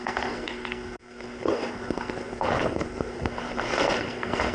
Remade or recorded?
remade